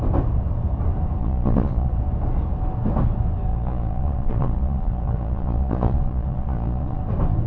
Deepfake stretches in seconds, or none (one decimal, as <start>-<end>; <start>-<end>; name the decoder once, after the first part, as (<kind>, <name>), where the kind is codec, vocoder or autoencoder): 1.2-1.9 (vocoder, Vocos); 3.5-7.0